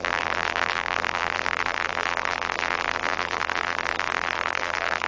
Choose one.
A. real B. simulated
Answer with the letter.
B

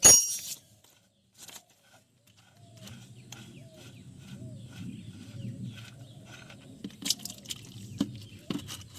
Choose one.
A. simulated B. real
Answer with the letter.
B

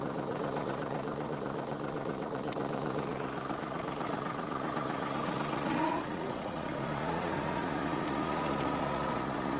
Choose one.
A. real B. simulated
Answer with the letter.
B